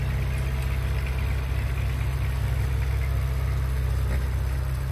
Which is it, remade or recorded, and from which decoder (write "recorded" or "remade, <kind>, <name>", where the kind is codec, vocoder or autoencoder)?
recorded